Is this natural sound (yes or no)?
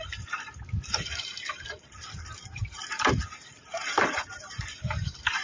no